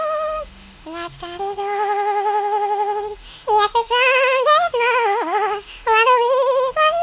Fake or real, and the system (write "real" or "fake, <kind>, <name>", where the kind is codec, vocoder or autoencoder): fake, autoencoder, DAC-VAE